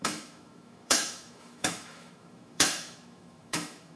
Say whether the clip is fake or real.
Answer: fake